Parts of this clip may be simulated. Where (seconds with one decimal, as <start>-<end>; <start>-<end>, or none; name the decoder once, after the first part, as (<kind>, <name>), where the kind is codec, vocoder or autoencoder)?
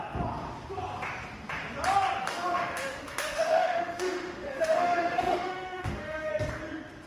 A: 2.2-6.3 (autoencoder, DAC-VAE)